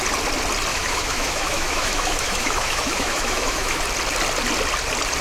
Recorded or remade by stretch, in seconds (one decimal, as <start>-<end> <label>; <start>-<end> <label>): 0.0-0.7 recorded; 0.7-3.8 remade; 3.8-5.2 recorded

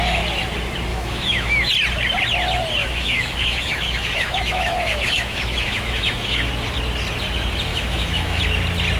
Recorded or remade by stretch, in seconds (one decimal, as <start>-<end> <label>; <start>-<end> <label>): 0.0-0.9 recorded; 0.9-1.7 remade; 1.7-2.8 recorded; 2.8-6.5 remade; 6.5-7.7 recorded; 7.7-8.4 remade; 8.4-9.0 recorded

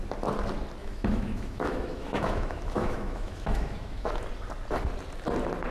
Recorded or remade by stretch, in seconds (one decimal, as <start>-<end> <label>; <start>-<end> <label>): 0.0-0.8 recorded; 0.8-4.2 remade; 4.2-5.7 recorded

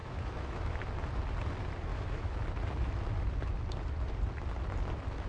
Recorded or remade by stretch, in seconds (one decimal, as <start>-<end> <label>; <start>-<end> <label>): 0.0-0.8 remade; 0.8-1.9 recorded; 1.9-2.4 remade; 2.4-5.3 recorded

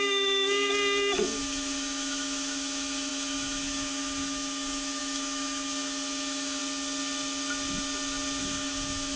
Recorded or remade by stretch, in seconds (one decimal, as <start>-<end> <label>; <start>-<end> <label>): 0.0-0.7 remade; 0.7-1.4 recorded; 1.4-6.6 remade; 6.6-8.4 recorded; 8.4-9.2 remade

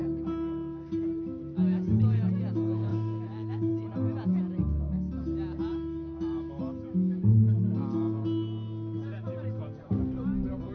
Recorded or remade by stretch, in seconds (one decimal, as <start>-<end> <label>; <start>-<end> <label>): 0.0-2.9 recorded; 2.9-3.7 remade; 3.7-5.7 recorded; 5.7-6.6 remade; 6.6-10.7 recorded